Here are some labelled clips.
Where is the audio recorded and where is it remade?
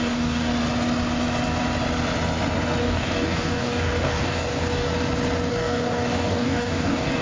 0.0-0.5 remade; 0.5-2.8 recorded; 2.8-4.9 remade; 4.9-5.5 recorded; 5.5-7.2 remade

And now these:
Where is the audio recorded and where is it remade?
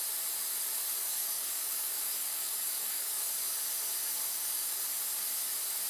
0.0-1.1 recorded; 1.1-3.3 remade; 3.3-4.3 recorded; 4.3-4.8 remade; 4.8-5.9 recorded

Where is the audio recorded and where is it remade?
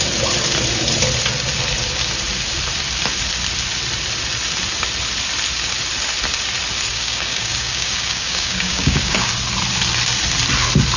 0.0-6.9 recorded; 6.9-9.3 remade; 9.3-11.0 recorded